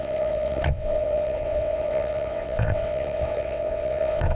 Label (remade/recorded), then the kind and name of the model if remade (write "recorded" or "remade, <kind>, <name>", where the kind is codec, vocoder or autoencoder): remade, vocoder, WaveNeXt